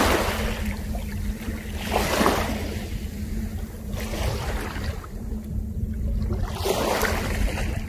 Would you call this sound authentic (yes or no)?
yes